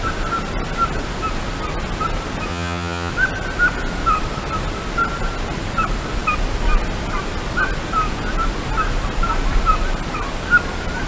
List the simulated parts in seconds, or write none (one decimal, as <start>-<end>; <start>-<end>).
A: 2.5-3.1